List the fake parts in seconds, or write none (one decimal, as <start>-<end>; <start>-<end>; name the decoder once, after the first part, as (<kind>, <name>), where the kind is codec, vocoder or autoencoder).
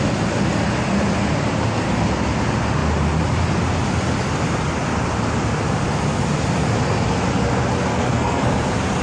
7.9-8.5 (codec, SNAC)